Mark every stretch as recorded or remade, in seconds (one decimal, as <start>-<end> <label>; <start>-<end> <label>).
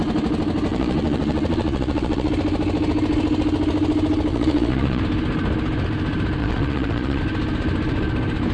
0.0-0.7 recorded; 0.7-2.3 remade; 2.3-4.3 recorded; 4.3-5.0 remade; 5.0-6.4 recorded; 6.4-7.2 remade; 7.2-8.5 recorded